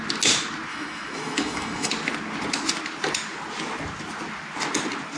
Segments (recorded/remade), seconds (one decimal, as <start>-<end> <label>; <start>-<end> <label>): 0.0-0.7 recorded; 0.7-1.9 remade; 1.9-5.2 recorded